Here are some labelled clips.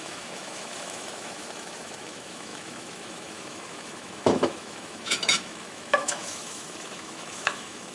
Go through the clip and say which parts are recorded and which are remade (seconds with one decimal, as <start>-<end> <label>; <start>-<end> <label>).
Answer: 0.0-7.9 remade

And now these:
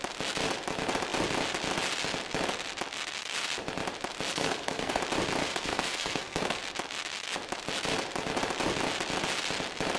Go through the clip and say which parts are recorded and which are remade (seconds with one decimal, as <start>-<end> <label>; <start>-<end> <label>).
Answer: 0.0-4.3 recorded; 4.3-5.0 remade; 5.0-5.4 recorded; 5.4-6.6 remade; 6.6-10.0 recorded

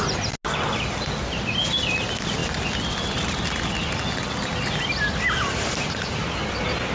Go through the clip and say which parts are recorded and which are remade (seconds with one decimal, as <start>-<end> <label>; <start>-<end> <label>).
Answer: 0.0-6.9 recorded

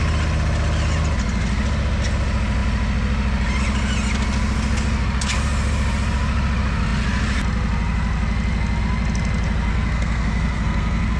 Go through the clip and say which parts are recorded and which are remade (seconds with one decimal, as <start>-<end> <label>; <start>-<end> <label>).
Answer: 0.0-9.7 recorded; 9.7-11.2 remade

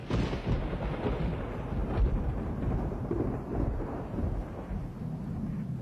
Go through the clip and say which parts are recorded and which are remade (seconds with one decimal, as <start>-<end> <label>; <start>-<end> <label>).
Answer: 0.0-1.8 recorded; 1.8-5.3 remade; 5.3-5.8 recorded

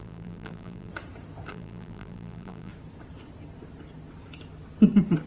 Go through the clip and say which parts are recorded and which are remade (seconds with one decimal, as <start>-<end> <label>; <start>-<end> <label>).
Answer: 0.0-0.9 remade; 0.9-1.5 recorded; 1.5-2.7 remade; 2.7-5.3 recorded